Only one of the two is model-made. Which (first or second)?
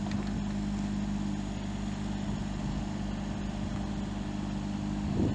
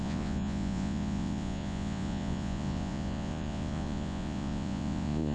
second